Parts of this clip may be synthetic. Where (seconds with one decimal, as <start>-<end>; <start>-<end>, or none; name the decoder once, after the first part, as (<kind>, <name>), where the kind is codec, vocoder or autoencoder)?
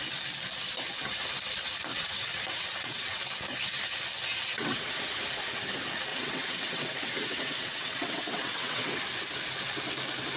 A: 1.9-3.2 (vocoder, WaveNeXt); 4.5-5.2; 6.1-9.0